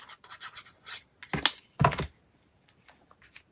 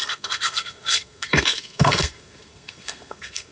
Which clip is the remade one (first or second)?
second